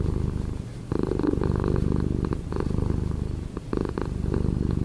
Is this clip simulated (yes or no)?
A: no